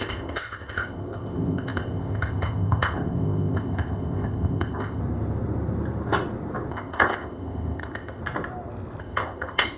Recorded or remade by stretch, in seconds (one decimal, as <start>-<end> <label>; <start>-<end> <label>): 0.0-5.0 remade; 5.0-6.7 recorded; 6.7-8.2 remade; 8.2-9.0 recorded; 9.0-9.8 remade